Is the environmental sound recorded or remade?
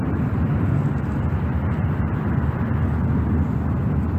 recorded